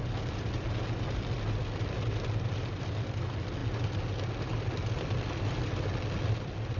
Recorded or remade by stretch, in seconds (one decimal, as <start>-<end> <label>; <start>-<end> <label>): 0.0-6.8 recorded

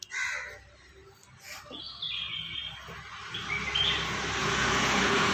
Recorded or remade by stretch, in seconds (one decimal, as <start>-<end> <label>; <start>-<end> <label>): 0.0-4.4 recorded; 4.4-5.3 remade

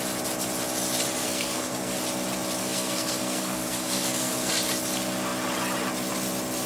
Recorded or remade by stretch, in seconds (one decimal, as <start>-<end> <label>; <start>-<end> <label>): 0.0-1.2 recorded; 1.2-2.0 remade; 2.0-2.6 recorded; 2.6-4.5 remade; 4.5-6.7 recorded

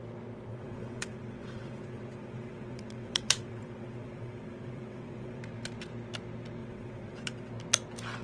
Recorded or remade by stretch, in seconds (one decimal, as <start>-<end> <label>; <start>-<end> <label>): 0.0-0.5 recorded; 0.5-5.4 remade; 5.4-6.6 recorded; 6.6-7.5 remade; 7.5-8.2 recorded